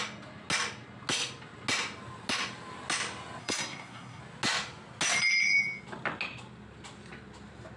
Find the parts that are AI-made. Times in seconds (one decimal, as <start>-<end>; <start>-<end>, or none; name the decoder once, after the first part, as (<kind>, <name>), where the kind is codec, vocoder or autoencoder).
3.4-4.2 (codec, SNAC)